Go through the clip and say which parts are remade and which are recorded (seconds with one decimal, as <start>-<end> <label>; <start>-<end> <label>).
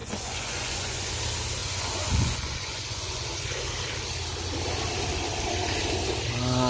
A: 0.0-1.1 remade; 1.1-1.6 recorded; 1.6-3.7 remade; 3.7-6.7 recorded